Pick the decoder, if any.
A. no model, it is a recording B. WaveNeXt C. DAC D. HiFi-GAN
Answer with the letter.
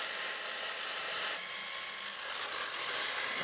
A